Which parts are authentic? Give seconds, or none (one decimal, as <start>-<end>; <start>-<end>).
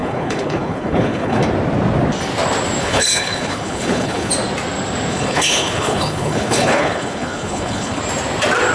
1.4-2.8; 4.3-5.1; 8.0-8.7